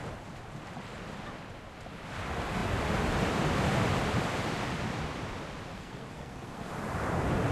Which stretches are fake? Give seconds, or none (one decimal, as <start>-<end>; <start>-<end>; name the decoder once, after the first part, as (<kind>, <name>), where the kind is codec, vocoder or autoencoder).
5.7-6.7 (codec, SNAC)